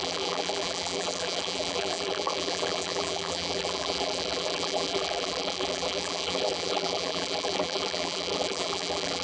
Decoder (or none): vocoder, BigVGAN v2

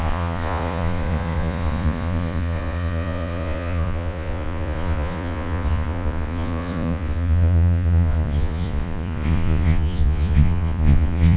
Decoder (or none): vocoder, Vocos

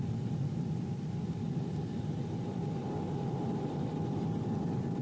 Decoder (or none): none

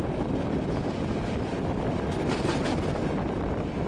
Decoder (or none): none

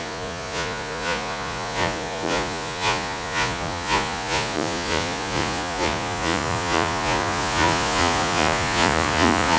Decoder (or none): vocoder, Vocos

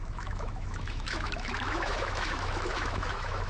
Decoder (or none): autoencoder, DAC-VAE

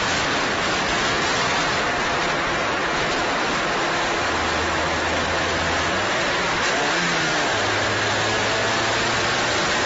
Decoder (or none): none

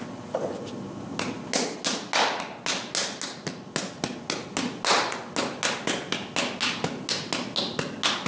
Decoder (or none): none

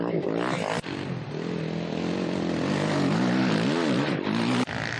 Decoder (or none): none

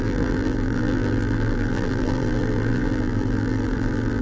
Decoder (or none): vocoder, BigVGAN v2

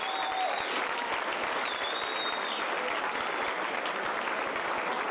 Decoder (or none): none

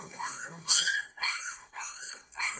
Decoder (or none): codec, SNAC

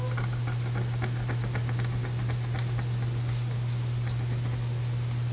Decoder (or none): none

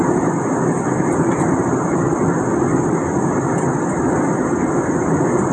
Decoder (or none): none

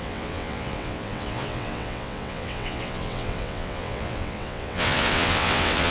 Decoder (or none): vocoder, WaveNeXt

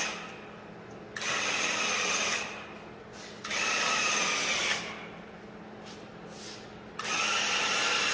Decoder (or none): none